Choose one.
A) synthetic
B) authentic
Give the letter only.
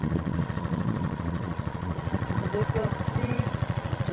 A